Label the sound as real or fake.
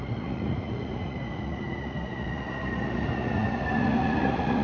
fake